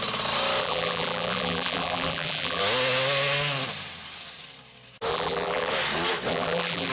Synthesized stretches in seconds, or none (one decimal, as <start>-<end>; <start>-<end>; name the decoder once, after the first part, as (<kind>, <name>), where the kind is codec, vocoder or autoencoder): 0.6-2.6 (vocoder, BigVGAN v2); 5.1-5.7; 6.3-6.9